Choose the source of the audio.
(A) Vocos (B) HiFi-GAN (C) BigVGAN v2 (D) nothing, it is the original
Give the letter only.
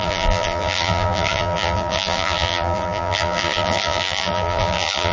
C